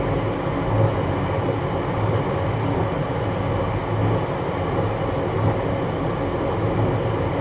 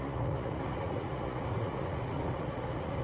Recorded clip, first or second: first